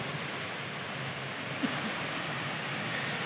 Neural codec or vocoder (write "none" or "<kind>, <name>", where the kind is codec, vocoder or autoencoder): none